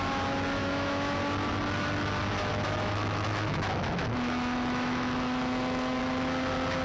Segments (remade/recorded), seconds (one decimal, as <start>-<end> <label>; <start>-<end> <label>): 0.0-0.6 recorded; 0.6-1.2 remade; 1.2-2.5 recorded; 2.5-6.0 remade; 6.0-6.8 recorded